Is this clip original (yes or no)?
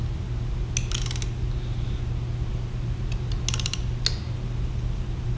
yes